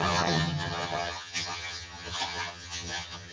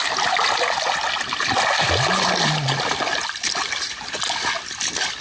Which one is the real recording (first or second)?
second